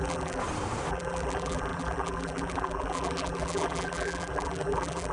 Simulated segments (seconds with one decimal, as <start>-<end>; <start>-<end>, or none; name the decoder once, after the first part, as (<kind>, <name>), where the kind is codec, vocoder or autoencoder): 0.0-0.4 (vocoder, BigVGAN v2); 0.9-5.1